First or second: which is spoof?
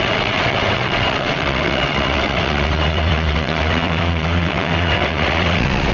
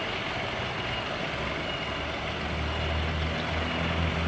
first